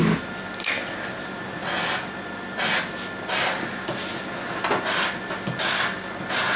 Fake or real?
real